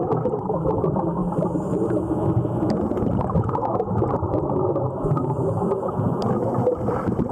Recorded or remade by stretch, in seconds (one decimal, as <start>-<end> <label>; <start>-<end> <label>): 0.0-1.2 recorded; 1.2-2.1 remade; 2.1-5.2 recorded; 5.2-6.2 remade; 6.2-7.3 recorded